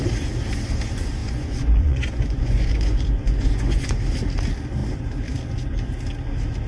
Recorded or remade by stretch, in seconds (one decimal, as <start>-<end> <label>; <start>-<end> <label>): 0.0-1.2 recorded; 1.2-4.0 remade; 4.0-6.7 recorded